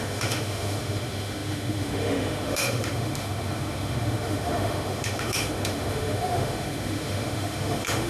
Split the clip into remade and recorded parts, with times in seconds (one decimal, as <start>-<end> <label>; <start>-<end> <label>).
0.0-8.1 remade